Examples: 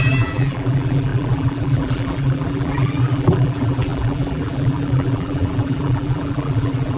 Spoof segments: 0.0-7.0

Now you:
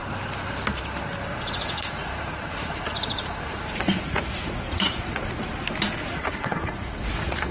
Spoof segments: 1.3-5.3; 6.0-7.5